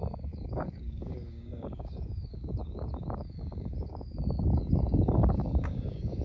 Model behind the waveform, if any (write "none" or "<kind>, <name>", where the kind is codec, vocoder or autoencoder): codec, DAC